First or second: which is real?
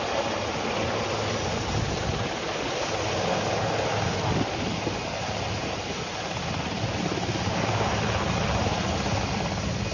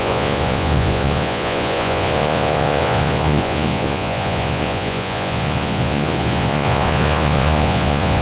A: first